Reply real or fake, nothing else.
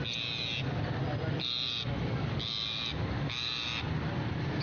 real